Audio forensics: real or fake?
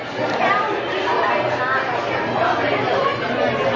real